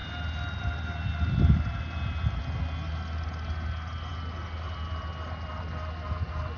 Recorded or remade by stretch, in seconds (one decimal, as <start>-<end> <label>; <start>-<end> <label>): 0.0-6.6 recorded